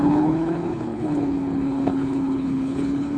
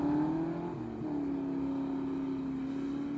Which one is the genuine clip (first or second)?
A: second